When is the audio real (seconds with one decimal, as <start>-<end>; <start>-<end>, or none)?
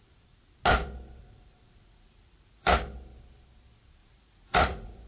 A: 0.0-1.2; 2.8-4.0